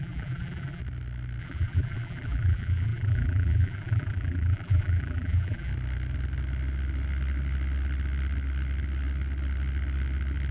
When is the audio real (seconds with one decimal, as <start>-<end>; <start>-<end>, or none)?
0.8-1.4; 5.7-10.5